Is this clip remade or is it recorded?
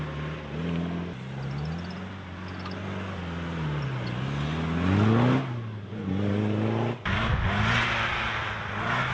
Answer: recorded